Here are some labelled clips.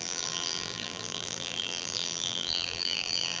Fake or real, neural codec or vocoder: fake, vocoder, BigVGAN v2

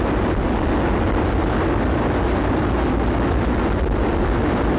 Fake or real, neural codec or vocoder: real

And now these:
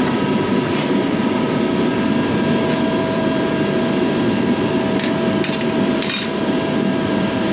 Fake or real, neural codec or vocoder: fake, vocoder, BigVGAN v2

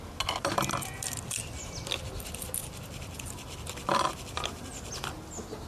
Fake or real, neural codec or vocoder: real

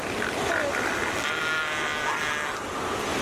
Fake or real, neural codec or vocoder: real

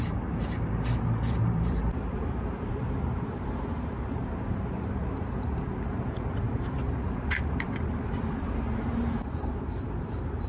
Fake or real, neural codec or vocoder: fake, vocoder, BigVGAN v2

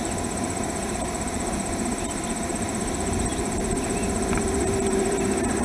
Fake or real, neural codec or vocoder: fake, vocoder, BigVGAN v2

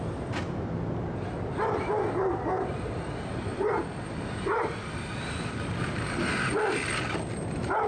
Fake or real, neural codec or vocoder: real